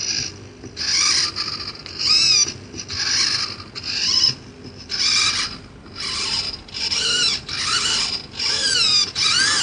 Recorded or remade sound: recorded